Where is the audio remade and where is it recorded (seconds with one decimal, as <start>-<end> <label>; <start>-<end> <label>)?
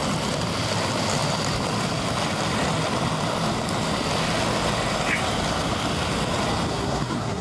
0.0-6.7 recorded; 6.7-7.4 remade